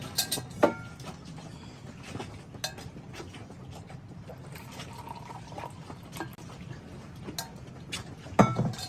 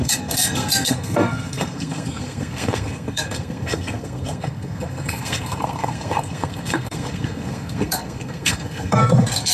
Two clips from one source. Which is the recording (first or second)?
first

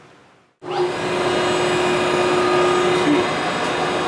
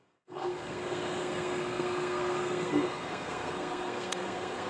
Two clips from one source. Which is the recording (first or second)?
first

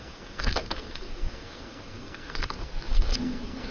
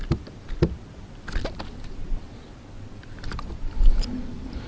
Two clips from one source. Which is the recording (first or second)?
second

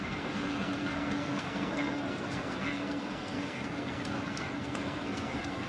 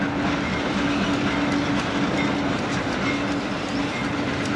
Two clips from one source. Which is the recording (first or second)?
second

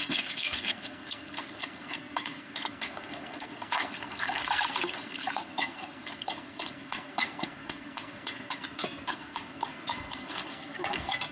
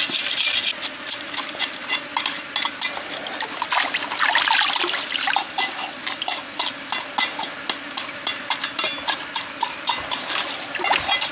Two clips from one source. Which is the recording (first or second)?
second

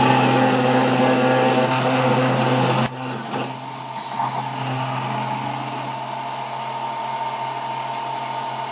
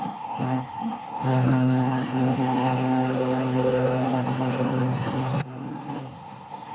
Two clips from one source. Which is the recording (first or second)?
first